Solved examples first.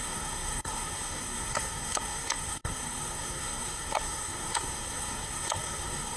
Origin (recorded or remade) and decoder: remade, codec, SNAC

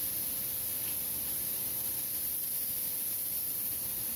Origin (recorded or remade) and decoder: recorded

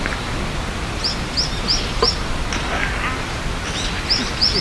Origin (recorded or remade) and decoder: recorded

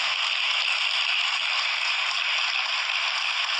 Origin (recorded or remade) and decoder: recorded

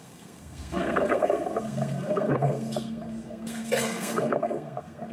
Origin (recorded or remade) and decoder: remade, codec, SNAC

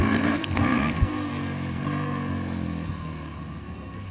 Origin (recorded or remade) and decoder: remade, codec, SNAC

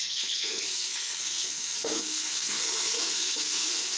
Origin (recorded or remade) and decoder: remade, codec, SNAC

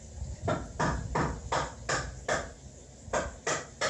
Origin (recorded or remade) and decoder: recorded